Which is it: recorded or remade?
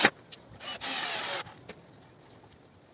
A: recorded